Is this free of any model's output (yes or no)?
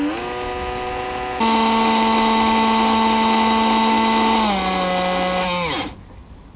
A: yes